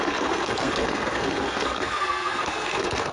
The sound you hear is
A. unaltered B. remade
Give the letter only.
B